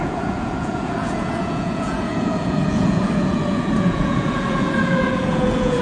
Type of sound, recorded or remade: remade